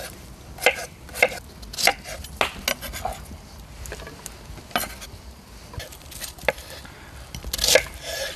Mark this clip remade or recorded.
recorded